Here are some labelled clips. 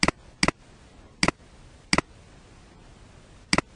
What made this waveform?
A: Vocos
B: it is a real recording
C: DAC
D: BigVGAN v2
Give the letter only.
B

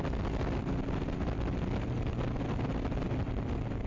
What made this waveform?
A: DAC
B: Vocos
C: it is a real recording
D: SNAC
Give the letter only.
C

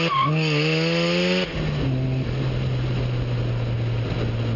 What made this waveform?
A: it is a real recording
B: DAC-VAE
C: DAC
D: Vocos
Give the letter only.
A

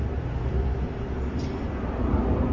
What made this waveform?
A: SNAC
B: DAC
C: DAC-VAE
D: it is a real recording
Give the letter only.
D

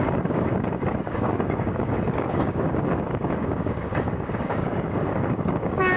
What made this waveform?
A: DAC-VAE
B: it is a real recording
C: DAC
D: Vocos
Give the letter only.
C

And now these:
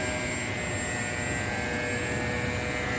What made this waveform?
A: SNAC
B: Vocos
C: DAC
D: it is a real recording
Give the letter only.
D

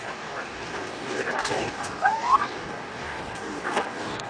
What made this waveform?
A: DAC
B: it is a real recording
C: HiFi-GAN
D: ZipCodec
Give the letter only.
A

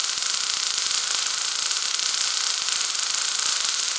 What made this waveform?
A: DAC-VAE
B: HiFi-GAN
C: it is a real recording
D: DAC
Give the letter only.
C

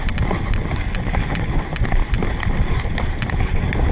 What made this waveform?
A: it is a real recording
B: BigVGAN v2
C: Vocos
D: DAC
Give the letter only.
A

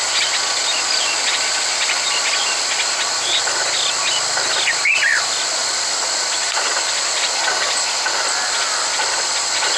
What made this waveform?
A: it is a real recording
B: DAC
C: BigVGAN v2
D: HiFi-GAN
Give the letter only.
A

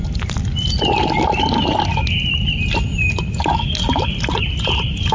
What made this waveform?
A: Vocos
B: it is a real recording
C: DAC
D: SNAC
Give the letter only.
B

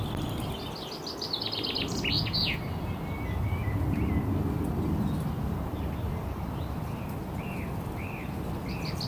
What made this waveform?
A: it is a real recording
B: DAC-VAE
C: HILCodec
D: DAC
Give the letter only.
A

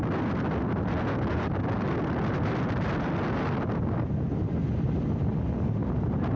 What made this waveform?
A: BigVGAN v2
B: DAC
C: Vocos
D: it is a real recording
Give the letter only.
D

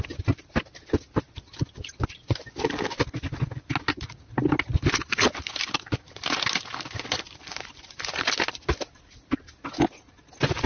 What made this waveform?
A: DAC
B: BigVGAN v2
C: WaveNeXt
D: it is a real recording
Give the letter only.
D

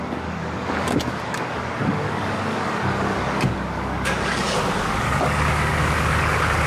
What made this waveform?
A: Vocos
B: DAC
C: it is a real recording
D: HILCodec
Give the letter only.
B